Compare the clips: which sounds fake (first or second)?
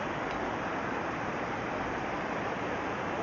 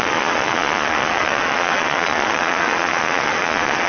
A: second